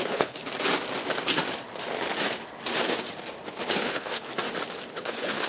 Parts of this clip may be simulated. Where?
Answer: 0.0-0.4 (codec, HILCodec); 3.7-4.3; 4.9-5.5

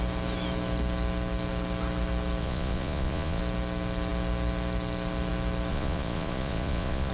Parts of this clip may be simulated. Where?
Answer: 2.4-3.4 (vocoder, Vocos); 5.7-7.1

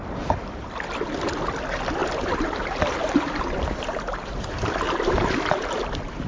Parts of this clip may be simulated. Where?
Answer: 2.0-5.8 (vocoder, BigVGAN v2)

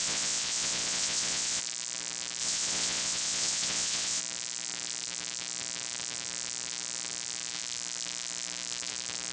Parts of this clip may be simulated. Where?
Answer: 0.0-1.6 (vocoder, Vocos); 2.4-4.2